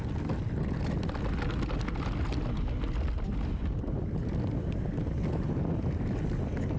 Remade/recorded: recorded